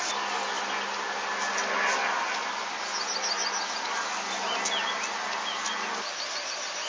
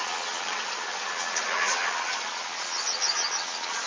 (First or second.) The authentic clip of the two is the first